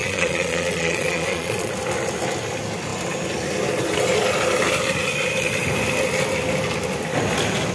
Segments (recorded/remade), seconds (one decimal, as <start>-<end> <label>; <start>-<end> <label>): 0.0-1.7 remade; 1.7-7.7 recorded